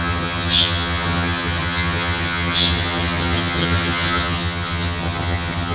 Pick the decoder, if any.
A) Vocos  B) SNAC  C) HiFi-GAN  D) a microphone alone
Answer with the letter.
C